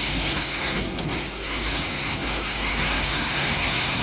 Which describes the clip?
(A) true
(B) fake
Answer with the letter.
B